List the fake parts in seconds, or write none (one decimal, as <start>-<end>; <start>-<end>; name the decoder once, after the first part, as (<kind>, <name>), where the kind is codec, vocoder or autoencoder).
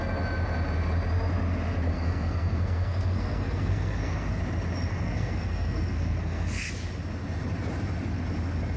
1.9-4.4 (codec, SNAC); 4.9-6.7